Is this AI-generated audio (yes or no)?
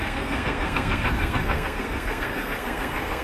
yes